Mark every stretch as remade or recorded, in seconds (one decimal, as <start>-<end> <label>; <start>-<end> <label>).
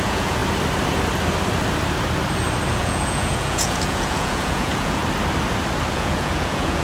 0.0-0.4 remade; 0.4-2.7 recorded; 2.7-5.0 remade; 5.0-5.9 recorded; 5.9-6.8 remade